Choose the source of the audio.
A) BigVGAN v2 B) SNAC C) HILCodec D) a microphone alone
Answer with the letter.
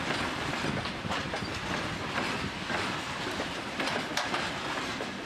D